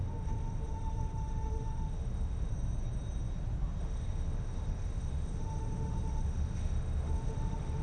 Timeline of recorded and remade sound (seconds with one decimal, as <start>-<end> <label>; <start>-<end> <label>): 0.0-2.5 remade; 2.5-3.8 recorded; 3.8-7.8 remade